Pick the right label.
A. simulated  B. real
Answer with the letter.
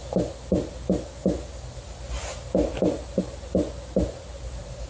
B